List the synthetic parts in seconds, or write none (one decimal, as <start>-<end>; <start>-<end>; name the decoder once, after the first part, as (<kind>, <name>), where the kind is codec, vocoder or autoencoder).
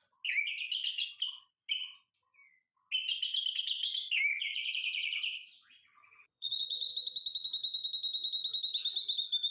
4.3-6.9 (vocoder, Vocos)